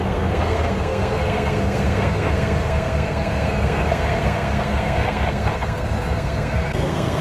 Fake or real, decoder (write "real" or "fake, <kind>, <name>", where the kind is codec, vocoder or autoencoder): fake, codec, SNAC